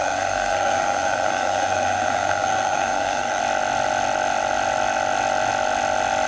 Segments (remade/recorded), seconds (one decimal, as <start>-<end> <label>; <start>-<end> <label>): 0.0-3.4 remade; 3.4-6.3 recorded